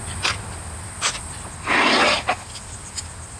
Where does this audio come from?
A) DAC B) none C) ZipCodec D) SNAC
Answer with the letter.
B